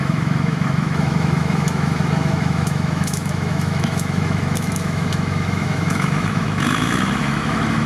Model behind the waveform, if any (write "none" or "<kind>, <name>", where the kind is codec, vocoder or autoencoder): autoencoder, DAC-VAE